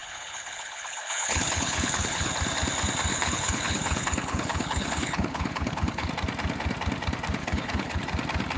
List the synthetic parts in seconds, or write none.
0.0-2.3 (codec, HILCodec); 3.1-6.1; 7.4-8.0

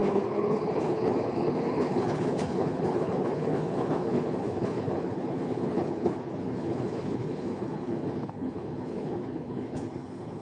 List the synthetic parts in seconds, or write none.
0.0-10.4 (codec, HILCodec)

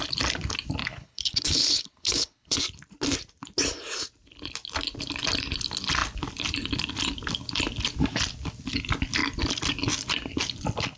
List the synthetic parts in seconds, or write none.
0.8-2.6 (codec, HILCodec)